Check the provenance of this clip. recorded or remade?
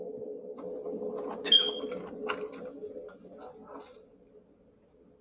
recorded